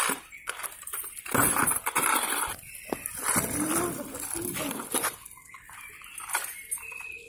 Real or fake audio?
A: fake